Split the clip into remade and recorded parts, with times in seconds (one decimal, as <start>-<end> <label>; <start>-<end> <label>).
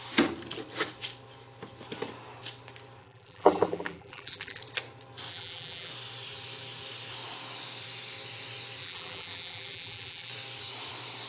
0.0-3.0 recorded; 3.0-4.6 remade; 4.6-5.3 recorded; 5.3-5.9 remade; 5.9-8.8 recorded; 8.8-10.3 remade; 10.3-11.3 recorded